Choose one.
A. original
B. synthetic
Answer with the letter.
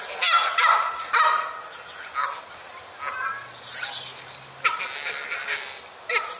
A